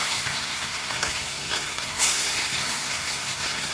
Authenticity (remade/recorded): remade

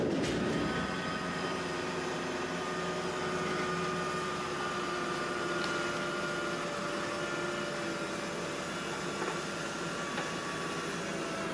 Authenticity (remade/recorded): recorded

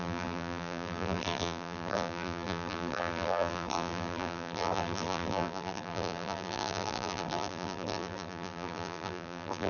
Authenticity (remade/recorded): remade